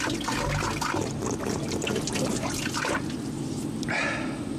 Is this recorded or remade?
recorded